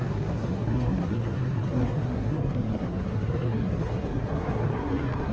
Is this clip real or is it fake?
fake